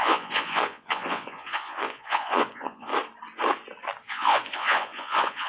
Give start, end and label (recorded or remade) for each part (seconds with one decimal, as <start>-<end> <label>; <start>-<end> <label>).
0.0-2.9 remade; 2.9-4.1 recorded; 4.1-5.5 remade